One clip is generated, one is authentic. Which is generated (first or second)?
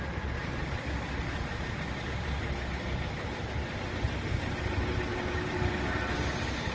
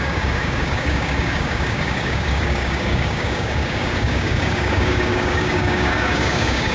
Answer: second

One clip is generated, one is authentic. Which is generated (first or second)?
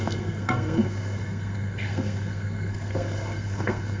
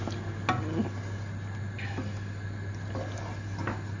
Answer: first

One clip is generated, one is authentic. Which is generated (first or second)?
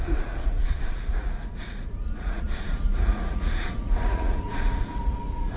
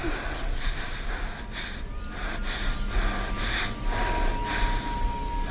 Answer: first